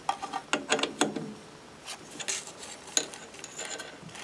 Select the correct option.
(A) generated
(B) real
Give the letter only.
B